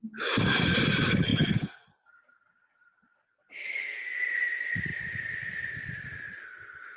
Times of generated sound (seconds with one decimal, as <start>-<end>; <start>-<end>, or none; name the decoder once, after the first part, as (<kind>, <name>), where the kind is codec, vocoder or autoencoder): none